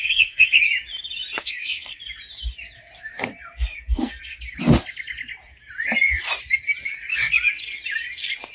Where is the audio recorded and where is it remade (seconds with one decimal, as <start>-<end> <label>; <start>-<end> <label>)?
0.0-0.6 remade; 0.6-1.4 recorded; 1.4-2.0 remade; 2.0-3.7 recorded; 3.7-4.4 remade; 4.4-8.5 recorded